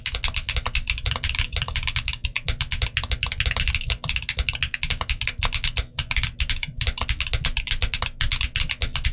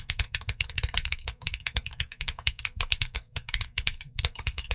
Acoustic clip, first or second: first